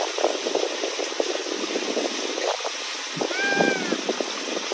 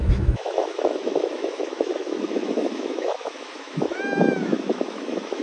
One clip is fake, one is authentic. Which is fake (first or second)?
second